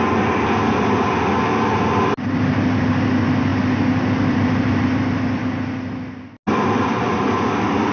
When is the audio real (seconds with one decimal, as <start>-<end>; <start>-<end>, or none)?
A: 0.0-7.9